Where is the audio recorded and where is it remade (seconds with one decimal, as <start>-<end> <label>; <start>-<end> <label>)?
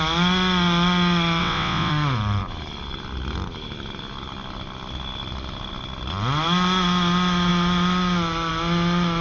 0.0-1.4 recorded; 1.4-1.9 remade; 1.9-9.2 recorded